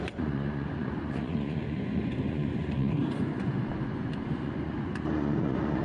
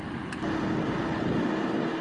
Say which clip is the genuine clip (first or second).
second